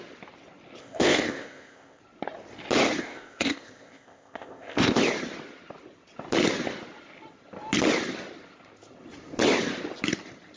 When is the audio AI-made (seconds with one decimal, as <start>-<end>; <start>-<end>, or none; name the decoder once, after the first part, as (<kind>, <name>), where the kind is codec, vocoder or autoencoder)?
0.8-2.0 (codec, ZipCodec); 3.0-5.0